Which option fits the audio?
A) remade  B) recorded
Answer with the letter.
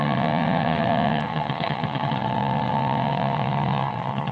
A